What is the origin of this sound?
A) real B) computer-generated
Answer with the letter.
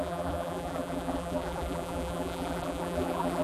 B